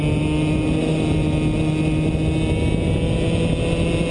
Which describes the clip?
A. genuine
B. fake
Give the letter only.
A